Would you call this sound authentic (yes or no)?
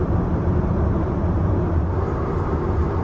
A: no